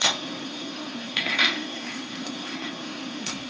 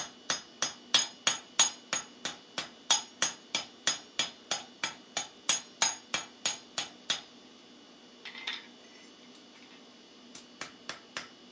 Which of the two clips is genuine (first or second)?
second